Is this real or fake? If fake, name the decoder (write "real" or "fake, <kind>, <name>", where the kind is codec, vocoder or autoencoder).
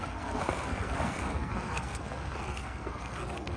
fake, codec, SNAC